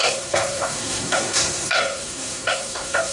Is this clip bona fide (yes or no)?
no